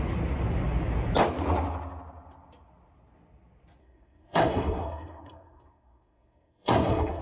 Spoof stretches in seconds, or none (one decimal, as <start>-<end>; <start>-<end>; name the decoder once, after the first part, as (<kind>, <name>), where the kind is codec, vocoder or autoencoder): 3.8-7.2 (codec, SNAC)